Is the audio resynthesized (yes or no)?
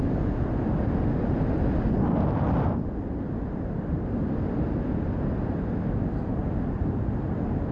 no